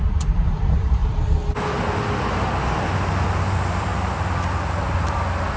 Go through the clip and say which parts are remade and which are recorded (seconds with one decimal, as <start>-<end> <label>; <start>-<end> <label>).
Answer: 0.0-1.0 remade; 1.0-3.4 recorded; 3.4-3.9 remade; 3.9-5.6 recorded

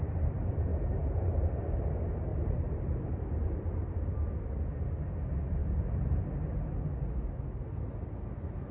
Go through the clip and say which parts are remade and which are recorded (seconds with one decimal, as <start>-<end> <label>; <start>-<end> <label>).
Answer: 0.0-0.7 recorded; 0.7-1.6 remade; 1.6-2.3 recorded; 2.3-3.1 remade; 3.1-5.6 recorded; 5.6-6.2 remade; 6.2-8.7 recorded

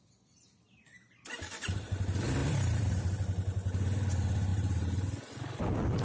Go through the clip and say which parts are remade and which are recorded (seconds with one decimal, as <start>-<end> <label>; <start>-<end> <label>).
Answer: 0.0-2.4 recorded; 2.4-3.0 remade; 3.0-4.5 recorded; 4.5-5.6 remade; 5.6-6.0 recorded